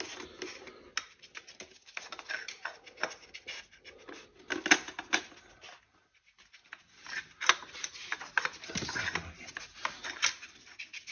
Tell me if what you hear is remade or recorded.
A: recorded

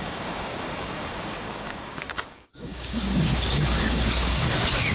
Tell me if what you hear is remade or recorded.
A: remade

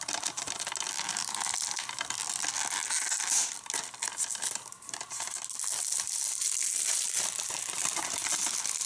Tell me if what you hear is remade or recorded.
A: recorded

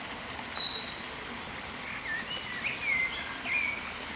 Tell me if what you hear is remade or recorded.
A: recorded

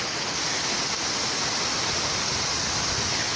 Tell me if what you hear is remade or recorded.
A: recorded